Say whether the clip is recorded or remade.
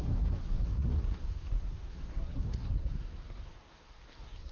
remade